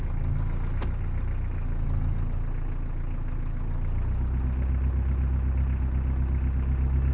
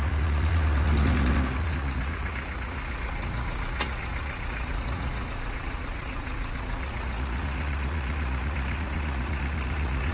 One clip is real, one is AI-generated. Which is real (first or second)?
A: first